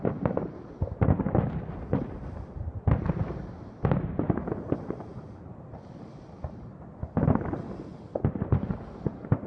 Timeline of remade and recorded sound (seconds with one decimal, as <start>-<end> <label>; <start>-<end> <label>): 0.0-9.5 recorded